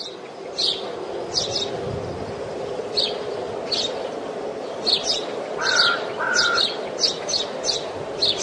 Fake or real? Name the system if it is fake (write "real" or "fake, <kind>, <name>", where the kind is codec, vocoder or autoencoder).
real